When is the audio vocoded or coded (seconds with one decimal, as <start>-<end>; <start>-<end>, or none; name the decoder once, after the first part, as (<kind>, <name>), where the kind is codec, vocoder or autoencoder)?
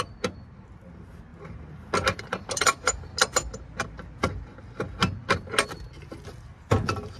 none